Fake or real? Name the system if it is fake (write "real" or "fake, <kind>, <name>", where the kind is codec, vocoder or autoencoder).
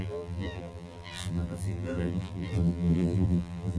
fake, vocoder, BigVGAN v2